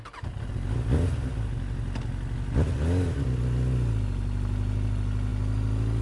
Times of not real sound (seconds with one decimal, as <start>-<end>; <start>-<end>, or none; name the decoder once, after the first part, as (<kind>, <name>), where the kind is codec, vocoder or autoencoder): none